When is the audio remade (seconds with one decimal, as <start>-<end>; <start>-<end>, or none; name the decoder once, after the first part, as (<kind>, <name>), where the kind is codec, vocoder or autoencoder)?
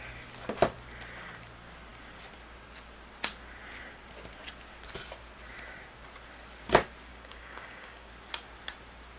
7.1-8.1 (codec, DAC)